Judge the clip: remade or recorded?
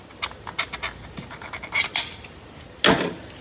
recorded